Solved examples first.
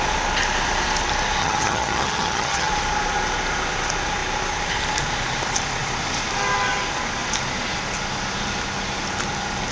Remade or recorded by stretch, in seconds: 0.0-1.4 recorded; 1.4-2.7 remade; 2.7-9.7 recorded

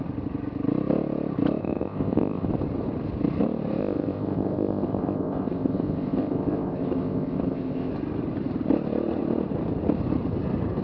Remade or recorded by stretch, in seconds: 0.0-1.6 recorded; 1.6-2.5 remade; 2.5-3.8 recorded; 3.8-7.9 remade; 7.9-10.8 recorded